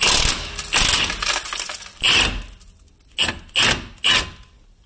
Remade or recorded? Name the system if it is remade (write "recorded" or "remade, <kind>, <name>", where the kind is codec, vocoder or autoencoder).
recorded